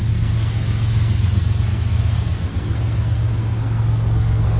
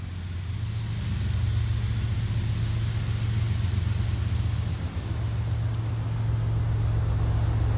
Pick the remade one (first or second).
first